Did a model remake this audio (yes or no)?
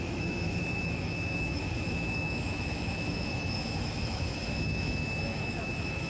yes